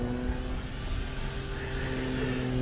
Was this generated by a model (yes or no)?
no